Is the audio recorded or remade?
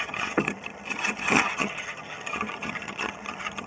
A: remade